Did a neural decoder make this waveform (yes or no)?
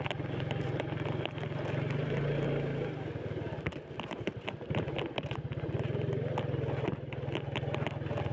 no